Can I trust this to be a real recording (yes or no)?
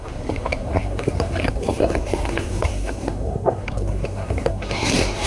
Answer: no